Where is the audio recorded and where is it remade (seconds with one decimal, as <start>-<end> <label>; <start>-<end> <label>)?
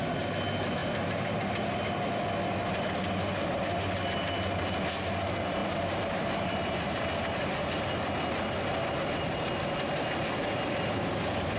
0.0-0.8 recorded; 0.8-2.1 remade; 2.1-5.6 recorded; 5.6-7.0 remade; 7.0-11.6 recorded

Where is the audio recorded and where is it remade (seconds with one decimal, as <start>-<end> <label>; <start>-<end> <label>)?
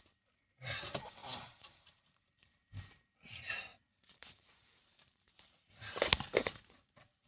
0.0-1.2 recorded; 1.2-3.2 remade; 3.2-3.7 recorded; 3.7-7.3 remade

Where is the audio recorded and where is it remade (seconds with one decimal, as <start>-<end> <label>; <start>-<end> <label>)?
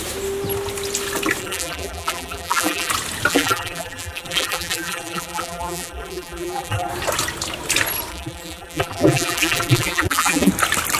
0.0-1.4 recorded; 1.4-2.9 remade; 2.9-3.3 recorded; 3.3-6.9 remade; 6.9-8.1 recorded; 8.1-10.5 remade; 10.5-11.0 recorded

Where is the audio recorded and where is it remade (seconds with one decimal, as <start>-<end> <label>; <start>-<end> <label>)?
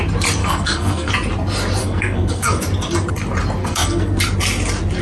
0.0-0.4 recorded; 0.4-1.1 remade; 1.1-1.8 recorded; 1.8-2.6 remade; 2.6-3.6 recorded; 3.6-4.2 remade; 4.2-5.0 recorded